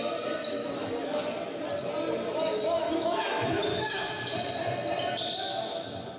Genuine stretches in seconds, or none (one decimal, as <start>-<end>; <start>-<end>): 0.0-0.6; 1.2-2.8; 4.2-6.2